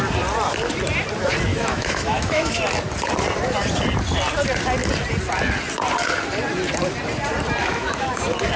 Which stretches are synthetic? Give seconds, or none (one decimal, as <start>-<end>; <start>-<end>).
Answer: 1.5-2.6; 7.6-8.2